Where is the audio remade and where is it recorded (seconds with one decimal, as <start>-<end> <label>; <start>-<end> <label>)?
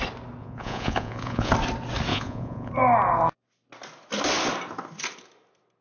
0.0-0.4 recorded; 0.4-1.5 remade; 1.5-2.1 recorded; 2.1-2.7 remade; 2.7-5.8 recorded